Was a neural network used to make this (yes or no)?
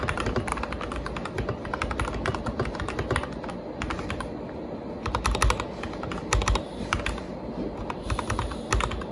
no